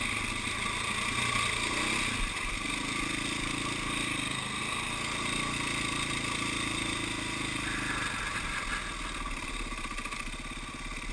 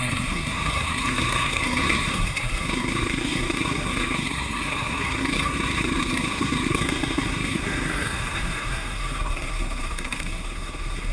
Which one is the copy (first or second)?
second